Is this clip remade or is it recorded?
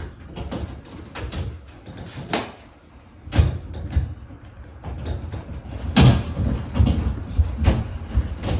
recorded